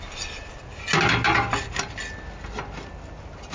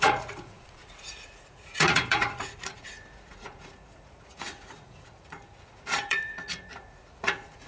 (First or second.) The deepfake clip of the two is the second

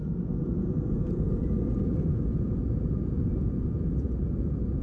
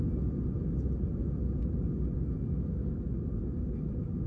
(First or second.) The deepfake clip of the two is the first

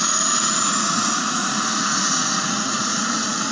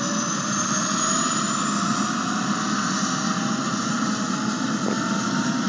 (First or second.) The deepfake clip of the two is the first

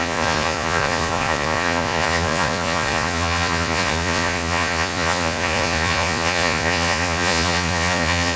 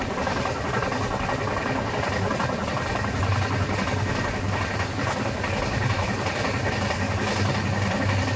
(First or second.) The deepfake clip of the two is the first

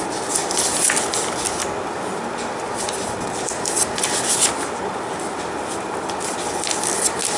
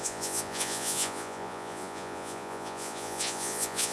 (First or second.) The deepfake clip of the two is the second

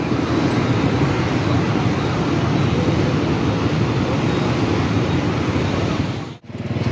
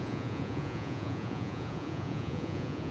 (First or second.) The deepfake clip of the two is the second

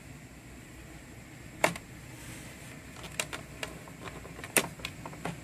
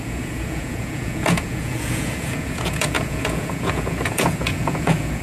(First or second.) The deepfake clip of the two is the second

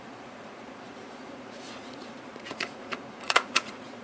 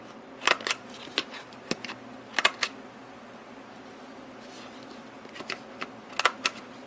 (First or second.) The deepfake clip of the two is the first